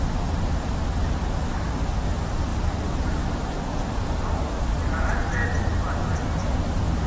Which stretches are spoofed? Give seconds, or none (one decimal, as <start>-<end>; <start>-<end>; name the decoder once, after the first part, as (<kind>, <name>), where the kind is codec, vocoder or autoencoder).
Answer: 0.0-5.4 (vocoder, BigVGAN v2); 6.2-7.1